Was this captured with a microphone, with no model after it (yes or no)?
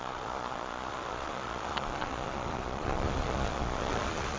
no